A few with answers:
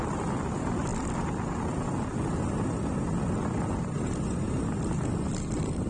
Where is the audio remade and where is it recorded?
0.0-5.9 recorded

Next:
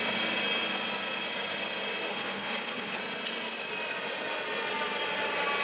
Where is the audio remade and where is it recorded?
0.0-2.1 recorded; 2.1-3.0 remade; 3.0-5.6 recorded

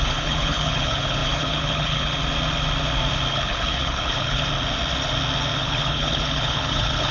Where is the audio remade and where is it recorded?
0.0-2.2 remade; 2.2-3.3 recorded; 3.3-4.4 remade; 4.4-5.6 recorded; 5.6-7.1 remade

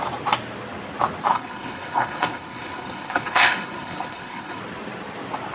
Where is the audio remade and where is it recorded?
0.0-1.3 recorded; 1.3-4.6 remade; 4.6-5.5 recorded

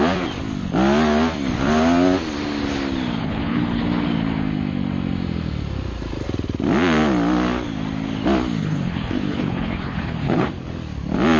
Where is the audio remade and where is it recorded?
0.0-3.2 recorded; 3.2-3.8 remade; 3.8-8.6 recorded; 8.6-10.5 remade; 10.5-11.4 recorded

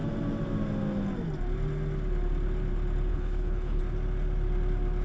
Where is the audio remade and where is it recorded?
0.0-3.1 recorded; 3.1-3.8 remade; 3.8-5.0 recorded